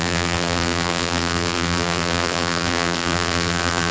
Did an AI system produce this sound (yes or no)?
yes